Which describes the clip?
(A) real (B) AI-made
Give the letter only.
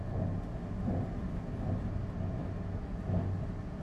A